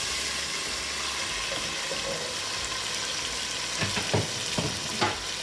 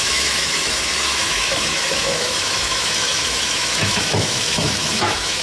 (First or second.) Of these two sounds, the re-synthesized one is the second